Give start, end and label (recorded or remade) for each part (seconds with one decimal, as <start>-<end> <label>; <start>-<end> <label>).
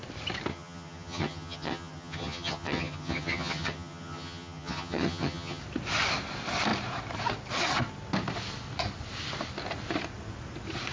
0.0-0.5 recorded; 0.5-5.6 remade; 5.6-10.9 recorded